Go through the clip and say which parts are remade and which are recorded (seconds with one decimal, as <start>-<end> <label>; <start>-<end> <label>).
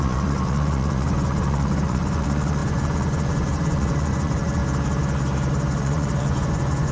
0.0-4.6 remade; 4.6-5.8 recorded; 5.8-6.9 remade